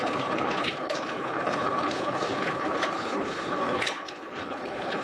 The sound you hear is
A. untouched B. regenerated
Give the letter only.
B